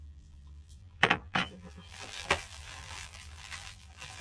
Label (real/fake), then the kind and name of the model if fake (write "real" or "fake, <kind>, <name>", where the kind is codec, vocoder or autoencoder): fake, vocoder, BigVGAN v2